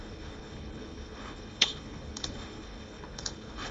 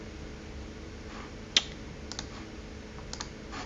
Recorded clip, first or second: second